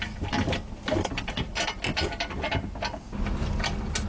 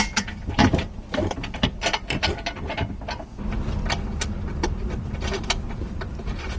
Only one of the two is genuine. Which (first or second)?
first